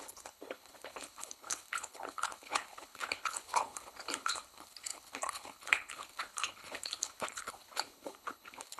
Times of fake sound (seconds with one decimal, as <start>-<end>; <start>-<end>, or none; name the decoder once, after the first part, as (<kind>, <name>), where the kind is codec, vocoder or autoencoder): 0.0-8.8 (codec, HILCodec)